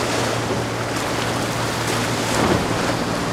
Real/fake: real